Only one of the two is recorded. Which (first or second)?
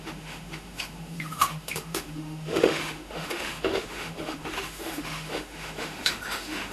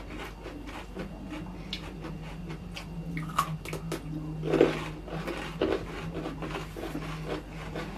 second